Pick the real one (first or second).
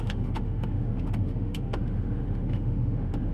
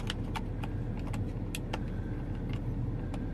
second